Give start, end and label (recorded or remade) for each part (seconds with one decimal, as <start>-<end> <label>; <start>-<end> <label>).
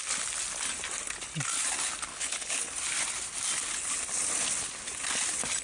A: 0.0-2.1 recorded; 2.1-2.7 remade; 2.7-5.6 recorded